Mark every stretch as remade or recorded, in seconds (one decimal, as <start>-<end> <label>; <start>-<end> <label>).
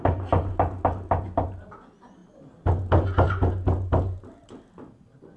0.0-5.4 recorded